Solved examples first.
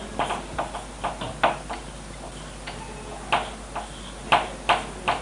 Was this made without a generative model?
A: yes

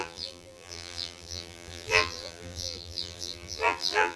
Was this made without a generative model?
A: no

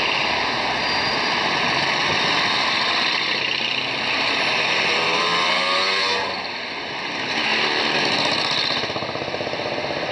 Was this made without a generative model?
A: yes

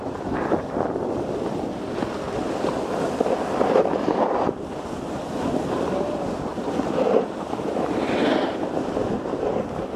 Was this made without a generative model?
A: yes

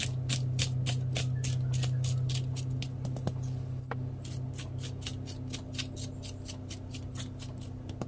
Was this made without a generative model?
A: yes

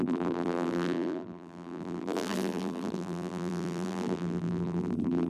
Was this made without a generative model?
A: no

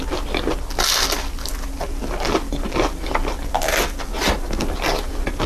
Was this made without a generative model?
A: yes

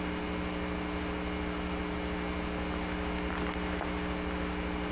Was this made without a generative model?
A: yes